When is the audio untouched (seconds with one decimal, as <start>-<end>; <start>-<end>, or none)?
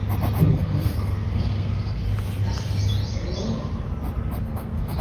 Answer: 0.0-0.5; 2.0-4.4